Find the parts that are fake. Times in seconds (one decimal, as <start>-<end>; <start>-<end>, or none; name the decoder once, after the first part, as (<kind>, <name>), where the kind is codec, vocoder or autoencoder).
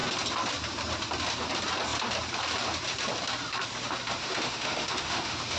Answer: 4.2-5.6 (autoencoder, DAC-VAE)